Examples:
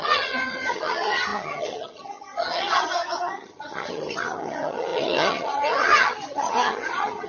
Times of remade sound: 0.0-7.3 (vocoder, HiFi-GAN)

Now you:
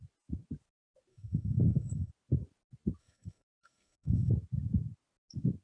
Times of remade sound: 1.1-2.1 (codec, SNAC); 3.0-4.3